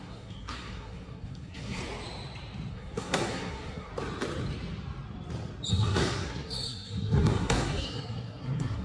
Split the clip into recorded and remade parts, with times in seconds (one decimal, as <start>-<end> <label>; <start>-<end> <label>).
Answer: 0.0-1.8 remade; 1.8-2.7 recorded; 2.7-3.9 remade; 3.9-5.7 recorded; 5.7-8.8 remade